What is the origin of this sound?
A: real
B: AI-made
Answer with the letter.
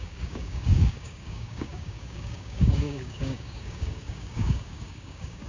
B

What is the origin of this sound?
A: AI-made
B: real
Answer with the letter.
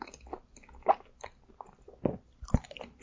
B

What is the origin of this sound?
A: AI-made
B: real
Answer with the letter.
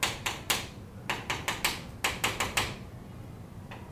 B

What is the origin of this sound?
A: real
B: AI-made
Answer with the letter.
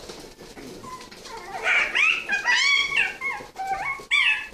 A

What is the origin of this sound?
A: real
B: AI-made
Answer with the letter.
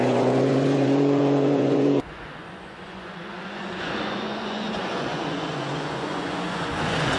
B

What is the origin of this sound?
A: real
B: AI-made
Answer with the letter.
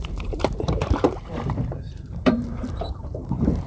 B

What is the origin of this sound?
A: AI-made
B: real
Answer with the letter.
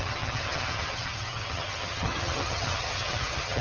A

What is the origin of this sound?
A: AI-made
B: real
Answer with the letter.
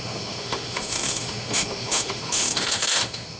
A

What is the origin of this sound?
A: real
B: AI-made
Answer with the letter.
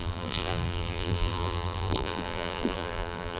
B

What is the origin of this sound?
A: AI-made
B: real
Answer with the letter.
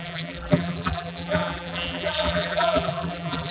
A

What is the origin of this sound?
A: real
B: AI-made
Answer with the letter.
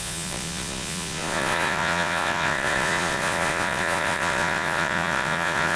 B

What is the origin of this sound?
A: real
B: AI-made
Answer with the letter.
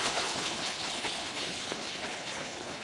B